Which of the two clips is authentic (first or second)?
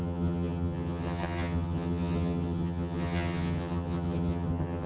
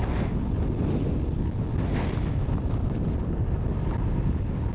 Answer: second